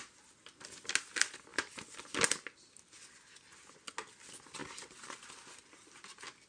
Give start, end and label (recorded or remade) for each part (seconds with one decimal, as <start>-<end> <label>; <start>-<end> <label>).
0.0-6.5 recorded